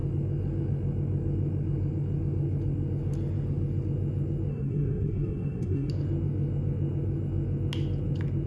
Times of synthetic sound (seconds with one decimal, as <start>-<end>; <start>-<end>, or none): 4.5-5.9